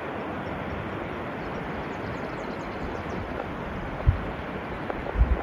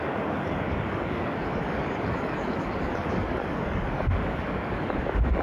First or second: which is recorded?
first